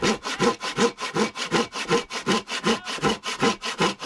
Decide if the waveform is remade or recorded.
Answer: recorded